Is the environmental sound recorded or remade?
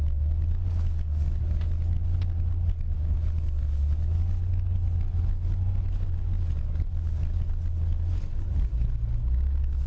recorded